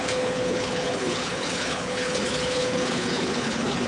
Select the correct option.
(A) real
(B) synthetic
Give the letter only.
B